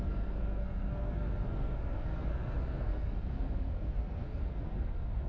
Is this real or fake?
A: fake